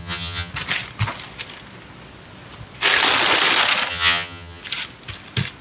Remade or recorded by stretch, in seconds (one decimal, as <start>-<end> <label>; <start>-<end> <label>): 0.0-0.5 remade; 0.5-3.9 recorded; 3.9-4.6 remade; 4.6-5.6 recorded

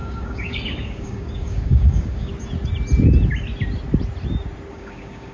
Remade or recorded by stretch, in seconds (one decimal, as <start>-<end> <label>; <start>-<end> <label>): 0.0-2.3 remade; 2.3-4.7 recorded; 4.7-5.3 remade